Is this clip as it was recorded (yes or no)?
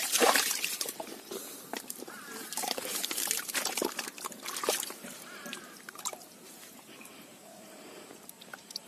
no